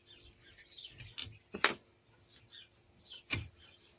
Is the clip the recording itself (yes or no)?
yes